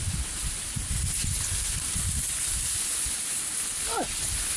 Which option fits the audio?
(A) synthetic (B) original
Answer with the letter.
B